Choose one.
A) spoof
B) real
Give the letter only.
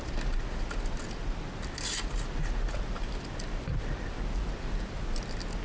B